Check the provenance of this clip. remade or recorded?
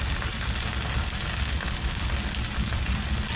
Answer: recorded